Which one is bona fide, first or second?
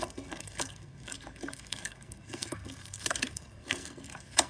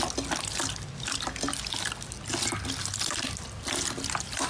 second